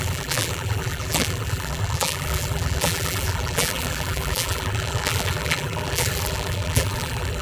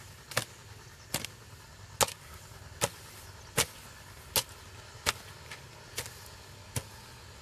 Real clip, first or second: second